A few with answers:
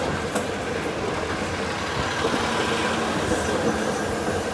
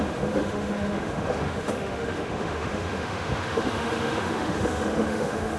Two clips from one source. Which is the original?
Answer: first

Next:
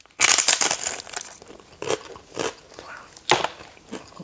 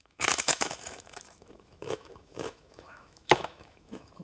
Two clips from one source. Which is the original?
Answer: first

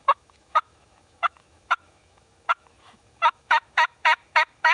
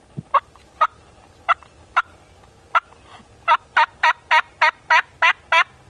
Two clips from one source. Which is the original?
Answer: second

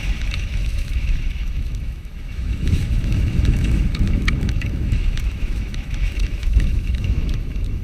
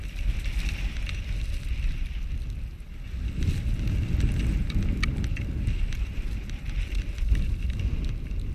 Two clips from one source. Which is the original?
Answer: second